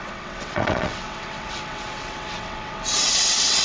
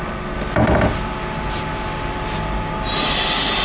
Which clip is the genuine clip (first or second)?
second